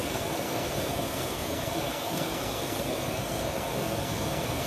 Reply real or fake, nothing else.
fake